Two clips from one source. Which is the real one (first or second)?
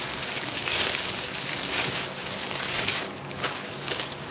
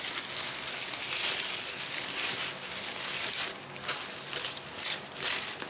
second